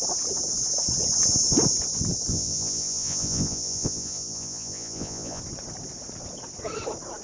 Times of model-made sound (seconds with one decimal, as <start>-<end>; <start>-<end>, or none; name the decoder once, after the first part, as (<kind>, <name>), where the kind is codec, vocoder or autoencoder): 2.3-5.4 (vocoder, Vocos)